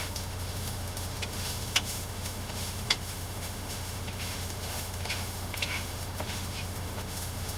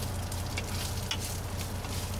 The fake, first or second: first